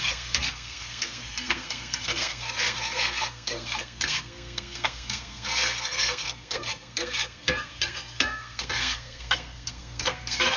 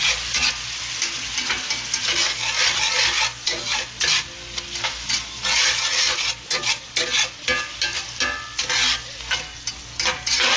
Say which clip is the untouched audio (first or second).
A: second